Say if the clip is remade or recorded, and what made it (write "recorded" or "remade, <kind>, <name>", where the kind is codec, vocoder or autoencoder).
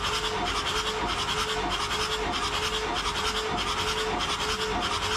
recorded